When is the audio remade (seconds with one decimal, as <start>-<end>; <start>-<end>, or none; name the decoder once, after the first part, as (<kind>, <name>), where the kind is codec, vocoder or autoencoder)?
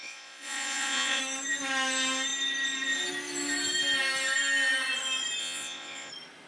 0.0-1.2 (vocoder, Vocos); 5.4-6.1